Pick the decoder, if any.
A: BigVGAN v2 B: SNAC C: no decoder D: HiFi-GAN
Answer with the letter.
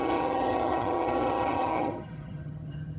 D